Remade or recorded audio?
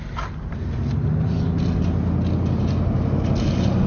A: recorded